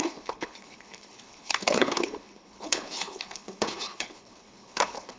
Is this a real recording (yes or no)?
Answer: no